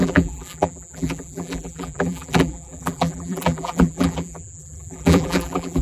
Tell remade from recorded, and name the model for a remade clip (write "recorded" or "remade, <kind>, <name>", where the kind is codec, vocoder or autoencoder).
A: remade, vocoder, BigVGAN v2